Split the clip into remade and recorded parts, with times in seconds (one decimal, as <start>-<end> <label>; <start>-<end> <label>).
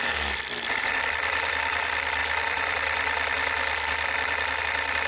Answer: 0.0-2.2 remade; 2.2-4.6 recorded; 4.6-5.1 remade